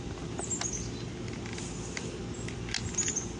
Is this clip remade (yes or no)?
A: no